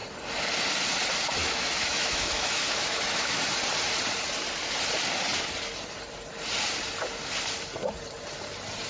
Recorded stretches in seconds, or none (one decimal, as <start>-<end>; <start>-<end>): 0.0-1.4; 3.4-8.9